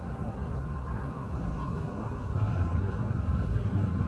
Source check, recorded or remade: remade